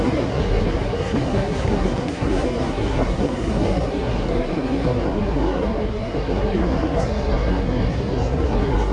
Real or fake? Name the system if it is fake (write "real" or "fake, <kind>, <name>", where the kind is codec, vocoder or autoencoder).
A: fake, codec, SNAC